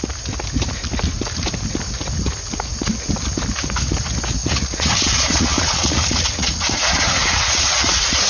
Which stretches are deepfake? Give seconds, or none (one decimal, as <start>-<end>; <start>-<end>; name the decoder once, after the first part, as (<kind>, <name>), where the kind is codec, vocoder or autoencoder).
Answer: 4.4-8.3 (vocoder, Vocos)